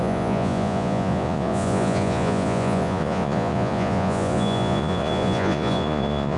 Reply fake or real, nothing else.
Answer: fake